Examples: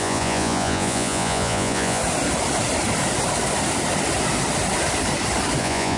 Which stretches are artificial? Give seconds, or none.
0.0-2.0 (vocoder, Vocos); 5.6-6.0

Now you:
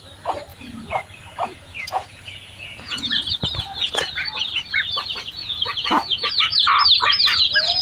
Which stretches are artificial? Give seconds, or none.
0.5-4.5 (vocoder, Vocos); 5.4-6.3

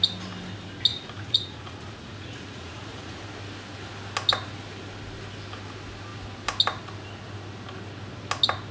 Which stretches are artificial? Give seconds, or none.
0.9-3.2 (vocoder, Vocos)

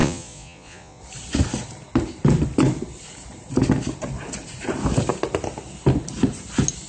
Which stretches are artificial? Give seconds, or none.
0.0-1.0 (vocoder, Vocos)

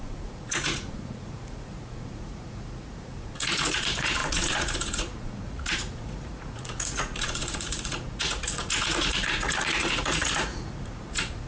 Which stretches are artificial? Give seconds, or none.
0.0-11.5 (vocoder, Vocos)